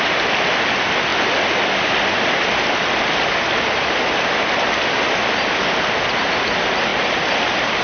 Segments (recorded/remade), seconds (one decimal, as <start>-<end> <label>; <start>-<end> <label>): 0.0-1.1 recorded; 1.1-3.9 remade; 3.9-6.9 recorded; 6.9-7.8 remade